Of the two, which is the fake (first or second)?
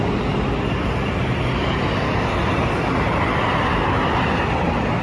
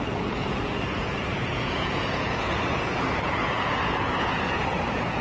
second